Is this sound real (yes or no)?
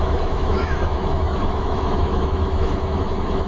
no